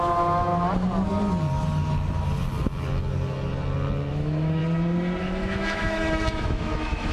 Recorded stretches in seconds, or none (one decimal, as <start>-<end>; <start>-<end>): 0.5-4.1; 4.6-5.2